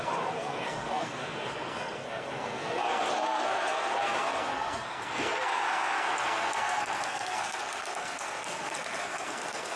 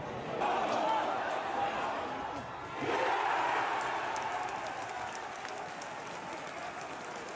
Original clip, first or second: second